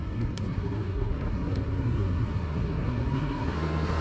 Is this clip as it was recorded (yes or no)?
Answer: no